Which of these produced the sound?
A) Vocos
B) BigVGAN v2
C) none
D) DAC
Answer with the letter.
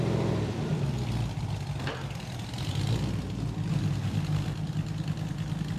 B